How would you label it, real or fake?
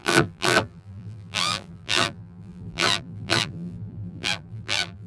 fake